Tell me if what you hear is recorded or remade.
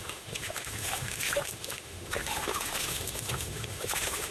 remade